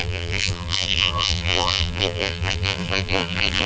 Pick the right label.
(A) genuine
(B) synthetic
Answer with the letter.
B